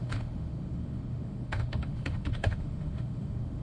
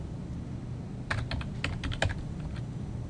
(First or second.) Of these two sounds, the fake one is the first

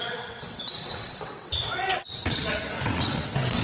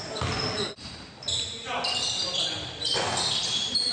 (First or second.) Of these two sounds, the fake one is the first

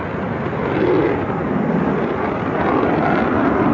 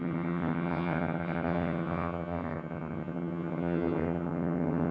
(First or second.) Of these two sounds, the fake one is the second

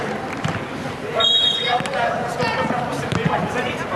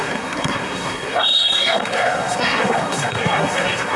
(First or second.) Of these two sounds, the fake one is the second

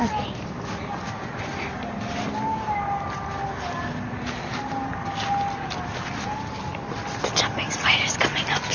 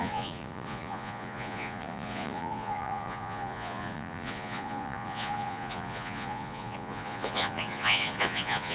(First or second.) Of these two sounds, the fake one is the second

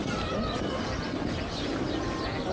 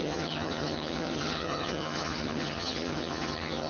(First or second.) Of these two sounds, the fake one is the second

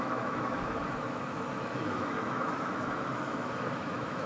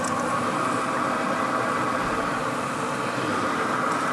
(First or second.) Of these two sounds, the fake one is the first